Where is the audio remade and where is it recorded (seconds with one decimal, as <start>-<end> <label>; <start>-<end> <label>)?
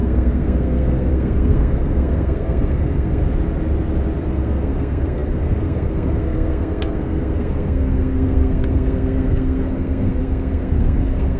0.0-3.2 remade; 3.2-4.3 recorded; 4.3-11.4 remade